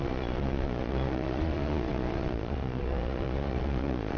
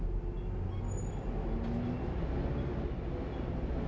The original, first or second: second